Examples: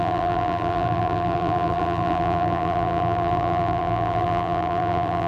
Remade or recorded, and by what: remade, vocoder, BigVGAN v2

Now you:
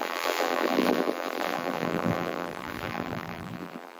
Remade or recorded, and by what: remade, vocoder, BigVGAN v2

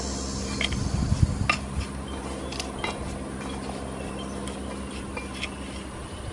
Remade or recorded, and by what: recorded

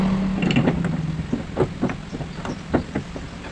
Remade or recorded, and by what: remade, vocoder, BigVGAN v2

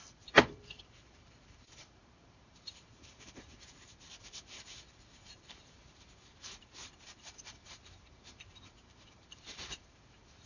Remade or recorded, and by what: remade, vocoder, BigVGAN v2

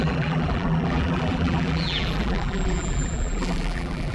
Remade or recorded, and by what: remade, vocoder, BigVGAN v2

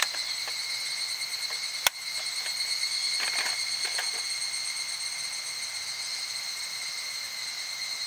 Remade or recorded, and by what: recorded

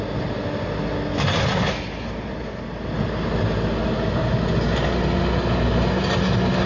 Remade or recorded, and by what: recorded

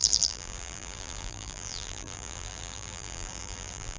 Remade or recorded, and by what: remade, vocoder, BigVGAN v2